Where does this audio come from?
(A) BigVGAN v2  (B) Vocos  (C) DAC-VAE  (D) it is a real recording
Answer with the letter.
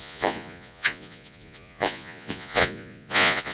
B